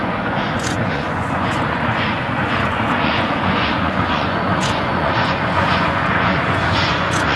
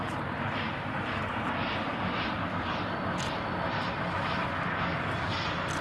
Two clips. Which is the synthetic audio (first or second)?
first